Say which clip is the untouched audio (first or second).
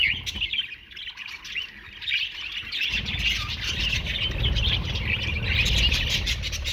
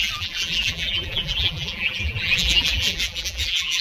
first